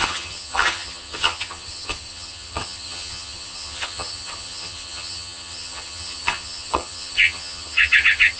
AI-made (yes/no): yes